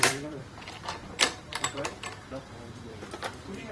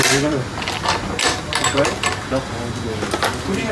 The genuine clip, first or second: second